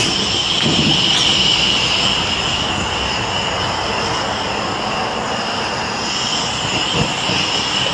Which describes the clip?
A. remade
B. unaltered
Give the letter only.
B